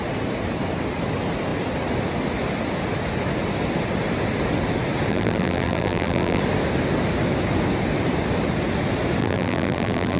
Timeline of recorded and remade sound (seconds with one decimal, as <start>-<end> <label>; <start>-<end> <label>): 0.0-5.1 recorded; 5.1-6.4 remade; 6.4-9.2 recorded; 9.2-10.2 remade